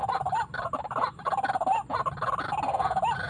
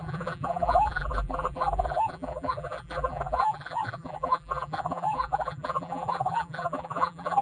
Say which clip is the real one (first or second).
first